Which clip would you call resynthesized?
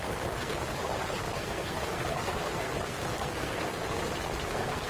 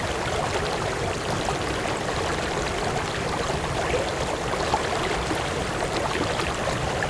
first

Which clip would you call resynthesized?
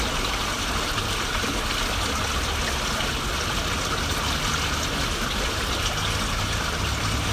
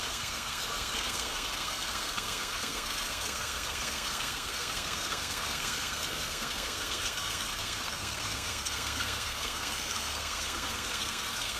second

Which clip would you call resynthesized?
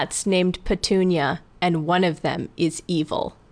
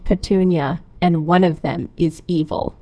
second